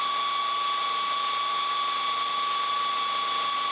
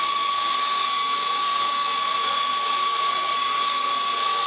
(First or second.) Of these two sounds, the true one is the first